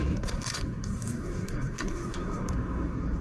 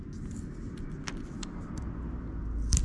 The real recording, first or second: second